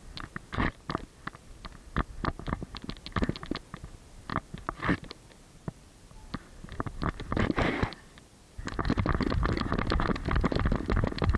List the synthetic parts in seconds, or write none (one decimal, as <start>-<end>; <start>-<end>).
0.6-3.0; 4.3-9.0